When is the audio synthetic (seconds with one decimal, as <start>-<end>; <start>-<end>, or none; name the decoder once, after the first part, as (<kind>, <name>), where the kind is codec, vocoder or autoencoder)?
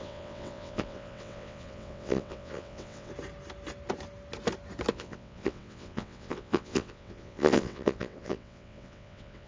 0.0-3.1 (vocoder, WaveNeXt); 4.9-9.5